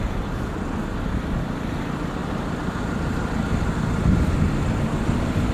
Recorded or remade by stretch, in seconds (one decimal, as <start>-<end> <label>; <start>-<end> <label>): 0.0-5.5 recorded